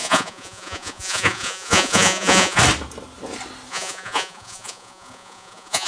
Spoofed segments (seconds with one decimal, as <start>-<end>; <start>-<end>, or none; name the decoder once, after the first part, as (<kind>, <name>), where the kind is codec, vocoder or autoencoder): 0.0-2.6 (vocoder, Vocos); 3.7-5.9